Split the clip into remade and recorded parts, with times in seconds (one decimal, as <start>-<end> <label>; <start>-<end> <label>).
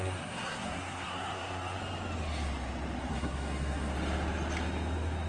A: 0.0-1.8 remade; 1.8-3.1 recorded; 3.1-3.9 remade; 3.9-5.3 recorded